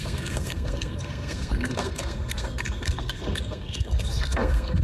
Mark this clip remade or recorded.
remade